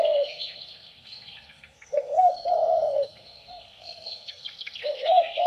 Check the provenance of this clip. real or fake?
fake